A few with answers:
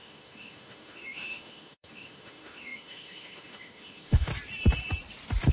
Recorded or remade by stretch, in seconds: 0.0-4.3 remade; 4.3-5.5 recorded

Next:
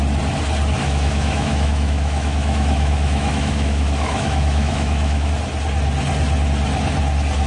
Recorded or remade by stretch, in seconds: 0.0-0.8 recorded; 0.8-5.3 remade; 5.3-7.5 recorded

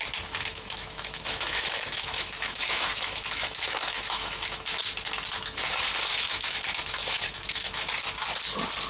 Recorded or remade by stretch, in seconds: 0.0-0.5 recorded; 0.5-4.8 remade; 4.8-6.1 recorded; 6.1-7.9 remade; 7.9-8.9 recorded

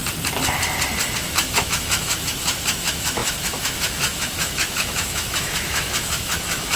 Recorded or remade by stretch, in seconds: 0.0-1.2 recorded; 1.2-6.8 remade

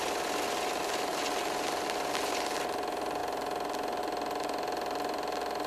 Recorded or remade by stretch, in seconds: 0.0-5.7 recorded

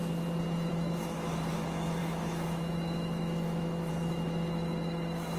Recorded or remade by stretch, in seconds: 0.0-0.7 recorded; 0.7-5.4 remade

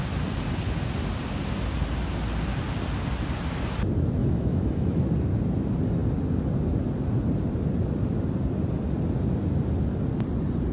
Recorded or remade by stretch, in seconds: 0.0-4.2 recorded; 4.2-5.0 remade; 5.0-10.7 recorded

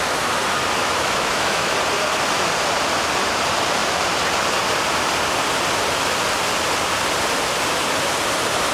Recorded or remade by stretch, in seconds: 0.0-0.8 recorded; 0.8-1.7 remade; 1.7-8.7 recorded